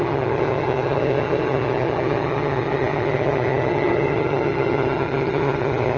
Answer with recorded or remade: remade